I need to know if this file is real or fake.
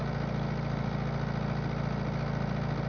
real